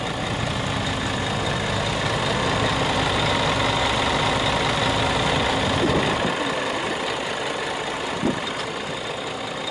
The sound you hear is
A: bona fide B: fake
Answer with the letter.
A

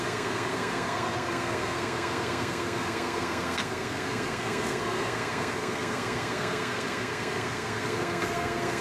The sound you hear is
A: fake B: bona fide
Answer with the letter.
A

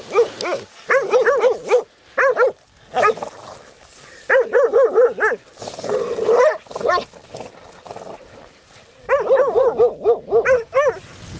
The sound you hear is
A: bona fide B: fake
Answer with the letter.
A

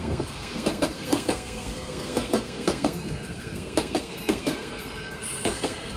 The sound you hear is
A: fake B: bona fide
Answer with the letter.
A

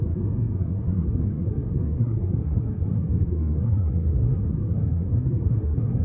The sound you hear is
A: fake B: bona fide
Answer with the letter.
A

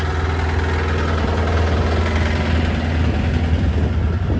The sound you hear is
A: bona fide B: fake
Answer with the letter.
A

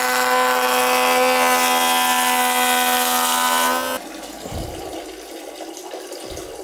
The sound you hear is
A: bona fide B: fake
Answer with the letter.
A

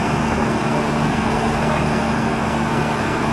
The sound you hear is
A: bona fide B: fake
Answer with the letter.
B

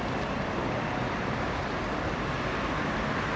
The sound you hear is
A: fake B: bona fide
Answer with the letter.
B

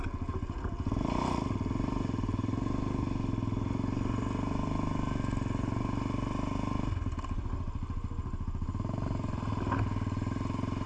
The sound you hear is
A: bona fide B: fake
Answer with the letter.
A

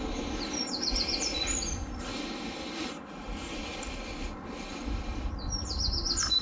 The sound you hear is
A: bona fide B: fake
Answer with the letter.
A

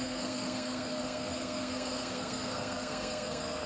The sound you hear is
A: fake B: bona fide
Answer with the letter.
A